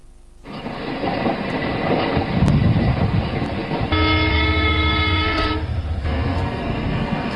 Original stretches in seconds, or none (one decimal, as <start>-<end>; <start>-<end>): 0.0-4.3; 5.5-6.0